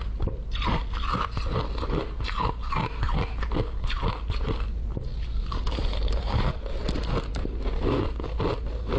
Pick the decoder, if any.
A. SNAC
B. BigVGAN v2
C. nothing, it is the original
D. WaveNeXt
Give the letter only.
C